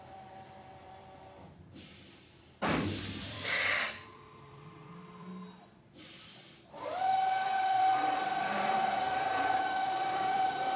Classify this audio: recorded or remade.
remade